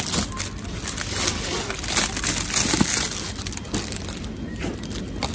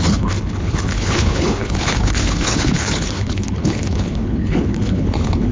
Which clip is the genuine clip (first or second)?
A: first